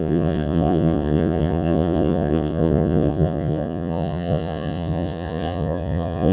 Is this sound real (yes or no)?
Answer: no